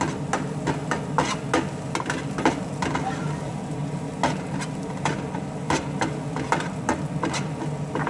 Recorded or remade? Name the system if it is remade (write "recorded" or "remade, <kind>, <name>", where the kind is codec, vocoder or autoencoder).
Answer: recorded